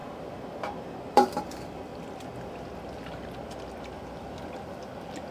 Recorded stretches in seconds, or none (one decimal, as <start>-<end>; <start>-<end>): 0.0-1.1; 1.9-5.3